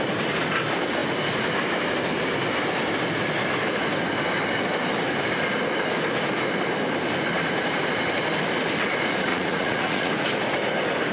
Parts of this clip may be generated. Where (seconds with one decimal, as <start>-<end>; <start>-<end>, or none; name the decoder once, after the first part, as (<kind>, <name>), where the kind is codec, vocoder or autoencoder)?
9.3-10.1 (vocoder, Vocos)